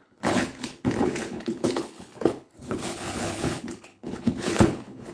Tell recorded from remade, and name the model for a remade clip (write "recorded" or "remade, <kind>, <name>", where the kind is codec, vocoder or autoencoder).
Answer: remade, codec, HILCodec